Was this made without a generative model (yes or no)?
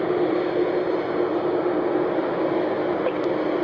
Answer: yes